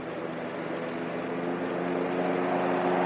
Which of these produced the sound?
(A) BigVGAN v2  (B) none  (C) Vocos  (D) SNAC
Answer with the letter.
B